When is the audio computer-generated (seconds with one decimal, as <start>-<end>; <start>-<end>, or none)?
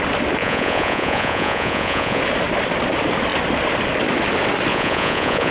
0.4-2.2; 4.7-5.5